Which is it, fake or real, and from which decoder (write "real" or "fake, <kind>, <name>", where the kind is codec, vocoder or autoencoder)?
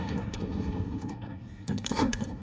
fake, codec, SNAC